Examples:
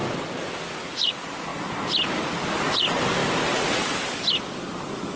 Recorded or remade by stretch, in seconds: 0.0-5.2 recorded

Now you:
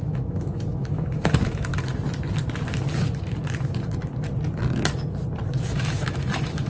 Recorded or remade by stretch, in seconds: 0.0-1.7 remade; 1.7-5.7 recorded; 5.7-6.7 remade

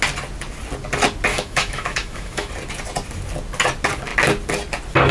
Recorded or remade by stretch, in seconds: 0.0-1.3 recorded; 1.3-2.5 remade; 2.5-5.1 recorded

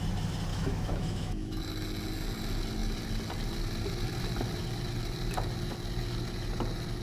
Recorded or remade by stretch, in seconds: 0.0-0.5 recorded; 0.5-1.6 remade; 1.6-7.0 recorded

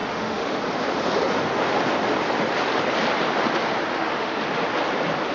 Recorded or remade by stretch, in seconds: 0.0-0.6 remade; 0.6-3.9 recorded; 3.9-4.4 remade; 4.4-5.3 recorded

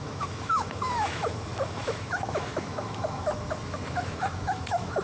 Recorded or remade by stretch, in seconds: 0.0-5.0 remade

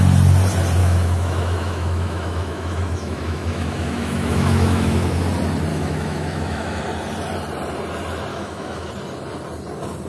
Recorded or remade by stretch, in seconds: 0.0-0.8 recorded; 0.8-5.2 remade; 5.2-5.7 recorded; 5.7-6.8 remade; 6.8-8.3 recorded; 8.3-8.9 remade; 8.9-10.1 recorded

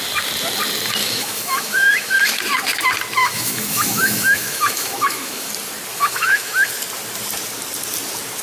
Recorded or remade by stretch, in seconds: 0.0-1.0 recorded; 1.0-2.4 remade; 2.4-3.2 recorded; 3.2-5.5 remade; 5.5-5.9 recorded; 5.9-6.7 remade; 6.7-8.4 recorded